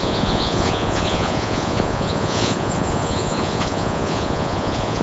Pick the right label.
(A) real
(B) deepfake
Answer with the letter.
B